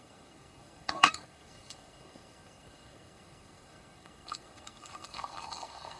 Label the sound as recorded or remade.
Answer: remade